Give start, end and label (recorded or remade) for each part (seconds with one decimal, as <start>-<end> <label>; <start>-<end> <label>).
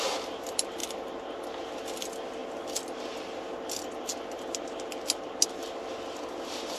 0.0-6.8 recorded